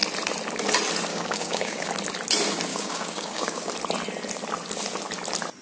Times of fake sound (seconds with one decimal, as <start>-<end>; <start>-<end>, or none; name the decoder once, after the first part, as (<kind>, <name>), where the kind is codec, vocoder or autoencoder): 1.1-1.9 (codec, DAC); 2.7-3.7